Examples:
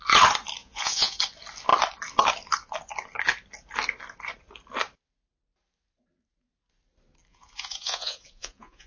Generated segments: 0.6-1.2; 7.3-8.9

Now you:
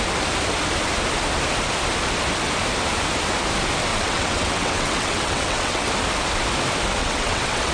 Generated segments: 3.9-5.9; 7.0-7.7

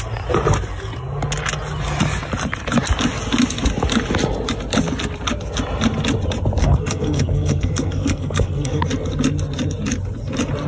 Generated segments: 6.6-8.8

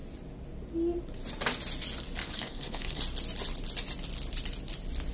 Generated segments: 2.2-3.0

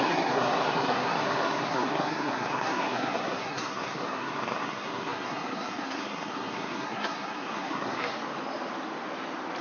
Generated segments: 0.0-8.1

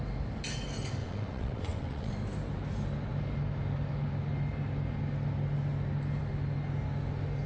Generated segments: 1.0-2.1

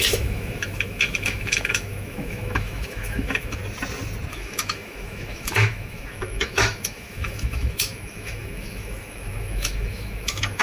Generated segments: 0.0-3.6; 4.3-10.6

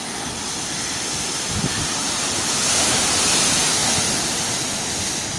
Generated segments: 1.7-3.4